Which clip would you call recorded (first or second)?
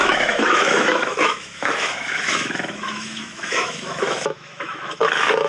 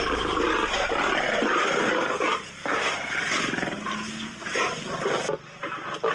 second